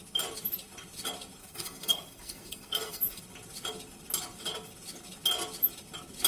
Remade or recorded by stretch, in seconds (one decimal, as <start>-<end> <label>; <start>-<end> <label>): 0.0-1.4 recorded; 1.4-3.2 remade; 3.2-6.3 recorded